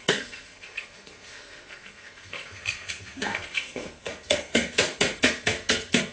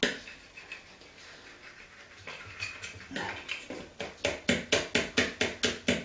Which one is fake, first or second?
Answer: first